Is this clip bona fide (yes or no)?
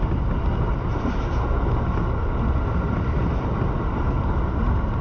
yes